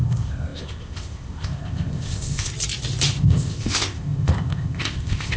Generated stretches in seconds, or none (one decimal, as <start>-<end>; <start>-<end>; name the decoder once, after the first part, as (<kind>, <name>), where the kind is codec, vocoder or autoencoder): 0.0-2.5 (codec, ZipCodec); 3.1-5.4